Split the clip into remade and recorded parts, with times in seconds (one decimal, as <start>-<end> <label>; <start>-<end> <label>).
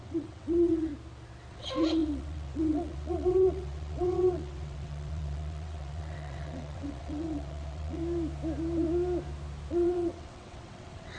0.0-0.9 remade; 0.9-1.5 recorded; 1.5-8.0 remade; 8.0-9.7 recorded; 9.7-11.2 remade